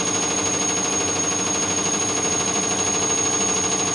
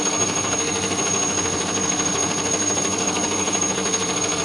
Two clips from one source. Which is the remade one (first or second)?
second